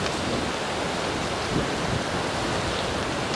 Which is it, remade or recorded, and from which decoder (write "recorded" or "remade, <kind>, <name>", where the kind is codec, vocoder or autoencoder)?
recorded